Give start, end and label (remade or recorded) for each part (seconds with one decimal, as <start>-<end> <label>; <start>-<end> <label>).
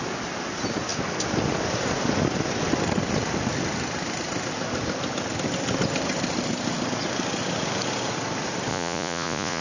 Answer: 0.0-8.7 recorded; 8.7-9.6 remade